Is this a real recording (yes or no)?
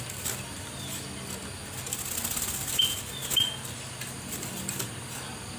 yes